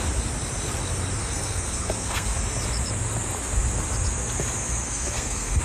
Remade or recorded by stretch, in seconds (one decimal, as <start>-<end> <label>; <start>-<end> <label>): 0.0-1.2 recorded; 1.2-2.4 remade; 2.4-4.8 recorded; 4.8-5.6 remade